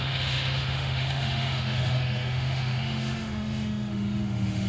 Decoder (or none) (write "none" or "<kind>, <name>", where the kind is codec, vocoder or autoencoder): autoencoder, DAC-VAE